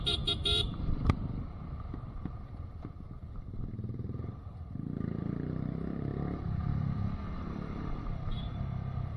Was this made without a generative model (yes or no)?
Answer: no